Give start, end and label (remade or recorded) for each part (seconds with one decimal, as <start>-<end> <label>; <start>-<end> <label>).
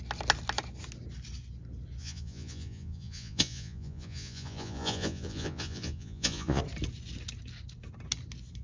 0.0-2.0 recorded; 2.0-6.6 remade; 6.6-8.6 recorded